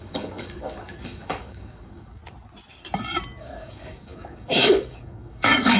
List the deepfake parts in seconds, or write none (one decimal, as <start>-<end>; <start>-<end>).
0.0-2.2; 3.4-5.8